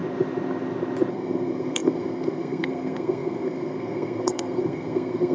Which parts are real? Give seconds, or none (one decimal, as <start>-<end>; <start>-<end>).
0.0-1.1